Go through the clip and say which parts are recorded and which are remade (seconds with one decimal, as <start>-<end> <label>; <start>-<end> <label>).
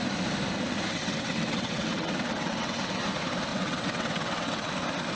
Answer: 0.0-0.9 recorded; 0.9-2.8 remade; 2.8-3.5 recorded; 3.5-4.7 remade; 4.7-5.2 recorded